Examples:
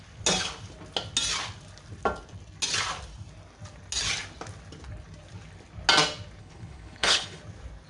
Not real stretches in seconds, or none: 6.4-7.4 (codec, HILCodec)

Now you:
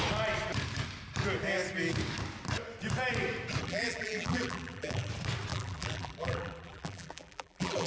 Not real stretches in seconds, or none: 3.6-5.1 (vocoder, BigVGAN v2); 5.5-7.9

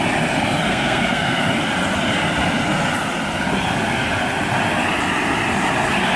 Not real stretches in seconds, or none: 0.7-1.4 (codec, SNAC)